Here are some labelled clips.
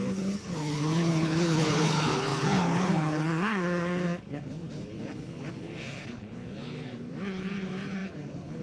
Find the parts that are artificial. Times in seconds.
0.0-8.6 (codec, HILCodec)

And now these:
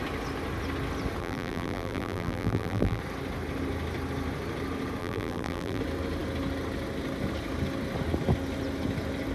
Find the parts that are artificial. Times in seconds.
1.2-3.0 (vocoder, BigVGAN v2); 5.0-5.8

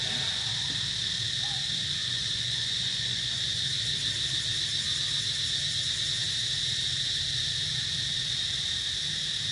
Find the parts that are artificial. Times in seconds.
2.0-3.6 (vocoder, Vocos)